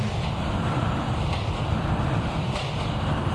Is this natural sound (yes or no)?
no